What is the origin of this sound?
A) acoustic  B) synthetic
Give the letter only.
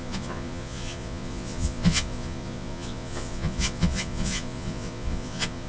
B